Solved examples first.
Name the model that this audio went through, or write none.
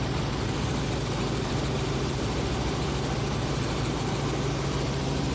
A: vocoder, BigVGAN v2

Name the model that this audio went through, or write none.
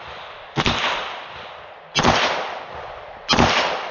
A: none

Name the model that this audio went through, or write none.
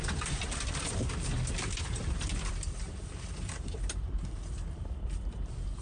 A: vocoder, BigVGAN v2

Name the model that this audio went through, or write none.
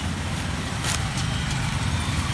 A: vocoder, BigVGAN v2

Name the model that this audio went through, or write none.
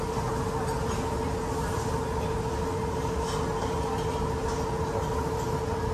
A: none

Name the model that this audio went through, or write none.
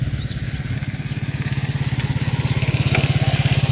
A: none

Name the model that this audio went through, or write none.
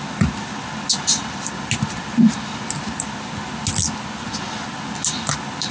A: none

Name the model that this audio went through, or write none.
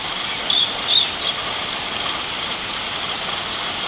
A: none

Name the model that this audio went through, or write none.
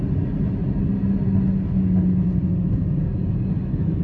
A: none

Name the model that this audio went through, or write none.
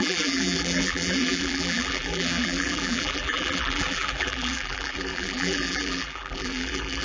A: vocoder, BigVGAN v2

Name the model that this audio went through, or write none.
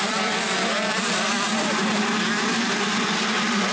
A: vocoder, BigVGAN v2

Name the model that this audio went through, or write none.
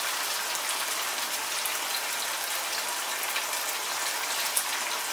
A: none